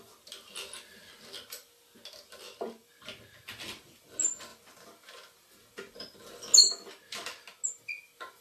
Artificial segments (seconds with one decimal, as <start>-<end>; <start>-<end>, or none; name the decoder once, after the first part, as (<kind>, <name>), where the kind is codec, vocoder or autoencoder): none